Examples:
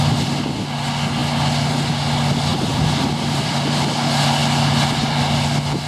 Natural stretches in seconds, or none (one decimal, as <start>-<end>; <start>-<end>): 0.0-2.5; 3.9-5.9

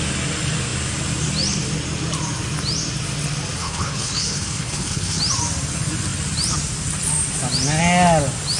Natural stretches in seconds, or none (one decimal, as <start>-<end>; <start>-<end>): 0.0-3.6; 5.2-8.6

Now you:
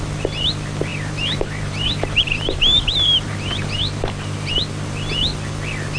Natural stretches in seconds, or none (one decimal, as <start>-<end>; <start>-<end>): 0.0-0.9; 4.5-6.0

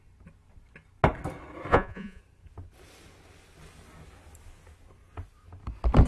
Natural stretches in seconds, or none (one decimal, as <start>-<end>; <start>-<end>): 0.0-1.7; 2.2-6.1

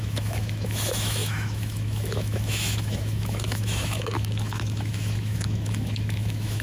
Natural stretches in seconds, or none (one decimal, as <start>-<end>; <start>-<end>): none

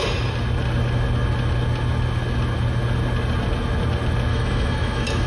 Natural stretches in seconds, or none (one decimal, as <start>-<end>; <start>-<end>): 0.0-4.3

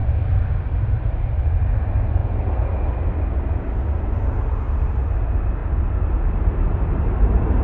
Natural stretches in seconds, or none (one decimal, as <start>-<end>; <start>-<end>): 1.2-2.2; 3.3-7.6

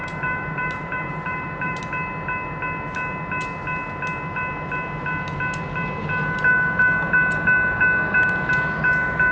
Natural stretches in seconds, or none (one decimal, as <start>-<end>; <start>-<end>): 1.8-9.3